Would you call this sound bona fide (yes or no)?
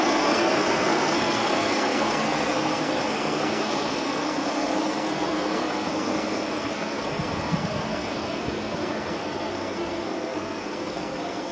no